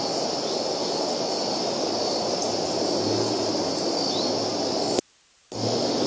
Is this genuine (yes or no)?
yes